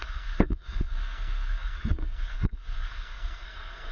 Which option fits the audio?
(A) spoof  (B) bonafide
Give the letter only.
A